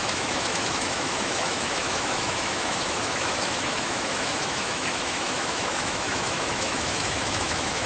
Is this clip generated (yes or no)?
yes